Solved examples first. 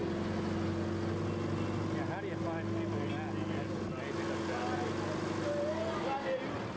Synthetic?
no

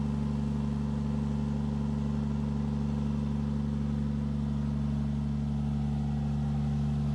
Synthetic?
no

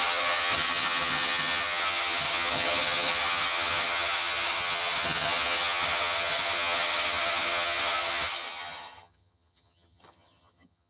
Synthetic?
yes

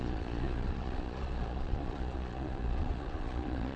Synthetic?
yes